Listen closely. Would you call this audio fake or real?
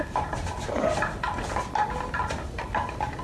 real